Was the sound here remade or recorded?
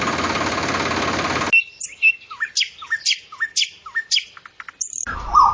recorded